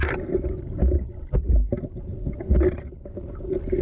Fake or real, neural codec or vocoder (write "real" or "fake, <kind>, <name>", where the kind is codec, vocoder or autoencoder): real